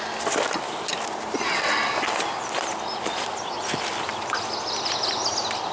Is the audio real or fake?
real